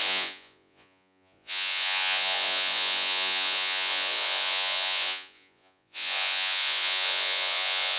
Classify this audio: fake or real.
fake